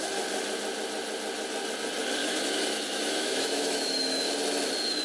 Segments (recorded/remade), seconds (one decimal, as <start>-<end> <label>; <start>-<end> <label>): 0.0-2.2 recorded; 2.2-4.3 remade; 4.3-5.0 recorded